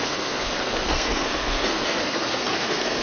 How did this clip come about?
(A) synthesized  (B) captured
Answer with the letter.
A